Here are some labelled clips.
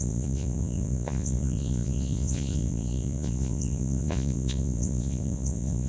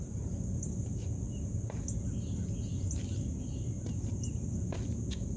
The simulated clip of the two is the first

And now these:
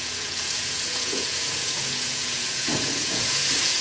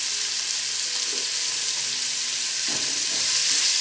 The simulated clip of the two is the first